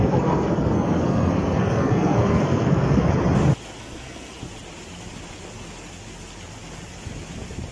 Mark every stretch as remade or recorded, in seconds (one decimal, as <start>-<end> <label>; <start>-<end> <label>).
0.0-3.1 remade; 3.1-3.8 recorded; 3.8-4.3 remade; 4.3-7.7 recorded